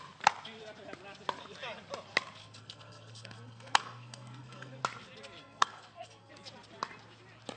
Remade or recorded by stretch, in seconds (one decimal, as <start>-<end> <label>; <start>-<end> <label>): 0.0-2.4 recorded; 2.4-4.8 remade; 4.8-5.4 recorded; 5.4-6.3 remade; 6.3-7.6 recorded